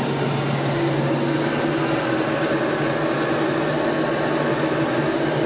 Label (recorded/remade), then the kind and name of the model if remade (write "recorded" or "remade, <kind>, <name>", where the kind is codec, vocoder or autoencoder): recorded